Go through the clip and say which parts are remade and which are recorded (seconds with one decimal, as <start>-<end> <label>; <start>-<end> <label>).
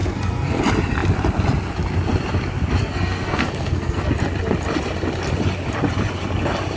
0.0-0.6 remade; 0.6-2.8 recorded; 2.8-4.1 remade; 4.1-6.8 recorded